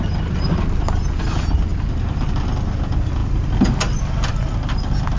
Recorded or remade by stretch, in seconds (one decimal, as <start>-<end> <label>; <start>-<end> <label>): 0.0-5.2 recorded